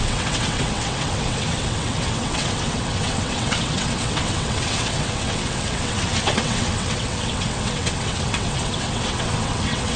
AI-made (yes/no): yes